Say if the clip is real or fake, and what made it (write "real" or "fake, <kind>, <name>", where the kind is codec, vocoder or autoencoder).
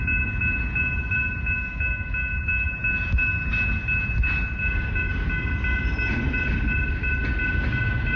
real